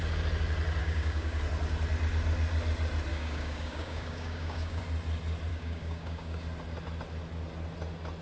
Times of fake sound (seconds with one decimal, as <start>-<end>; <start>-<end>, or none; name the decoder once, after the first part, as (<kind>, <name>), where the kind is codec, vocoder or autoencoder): 0.8-1.4 (codec, DAC); 3.1-4.8; 5.5-6.4